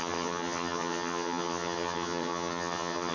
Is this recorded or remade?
remade